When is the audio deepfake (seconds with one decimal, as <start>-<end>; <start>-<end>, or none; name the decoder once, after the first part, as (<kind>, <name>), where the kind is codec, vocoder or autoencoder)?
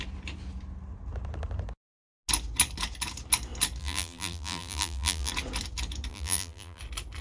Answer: 3.8-5.3 (vocoder, BigVGAN v2); 6.1-6.8